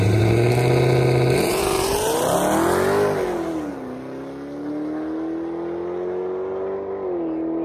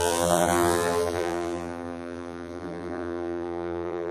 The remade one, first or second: second